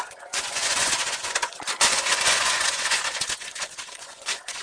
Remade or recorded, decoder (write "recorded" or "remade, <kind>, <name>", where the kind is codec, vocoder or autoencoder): remade, vocoder, Vocos